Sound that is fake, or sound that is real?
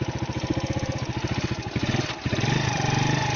real